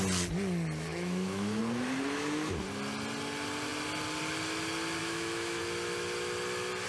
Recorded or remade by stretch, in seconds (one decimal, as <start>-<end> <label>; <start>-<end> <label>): 0.0-0.9 recorded; 0.9-1.6 remade; 1.6-5.0 recorded; 5.0-5.6 remade; 5.6-6.9 recorded